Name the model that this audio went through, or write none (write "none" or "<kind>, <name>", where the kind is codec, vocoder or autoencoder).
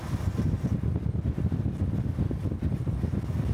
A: none